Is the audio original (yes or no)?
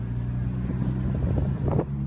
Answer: yes